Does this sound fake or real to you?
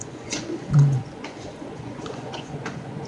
fake